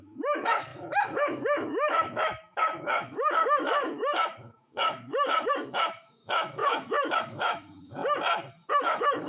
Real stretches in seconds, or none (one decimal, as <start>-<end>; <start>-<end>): 8.0-8.7

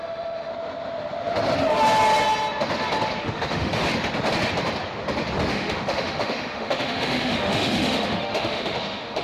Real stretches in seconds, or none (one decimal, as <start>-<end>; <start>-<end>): 0.5-3.2; 3.8-5.5

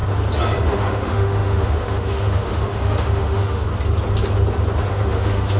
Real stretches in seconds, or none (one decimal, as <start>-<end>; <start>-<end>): 0.0-0.7; 3.7-4.9